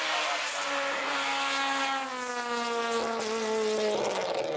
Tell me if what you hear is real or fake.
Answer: real